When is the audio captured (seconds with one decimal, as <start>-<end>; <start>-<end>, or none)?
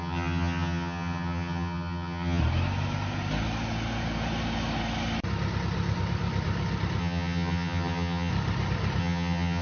2.4-7.0; 8.3-9.0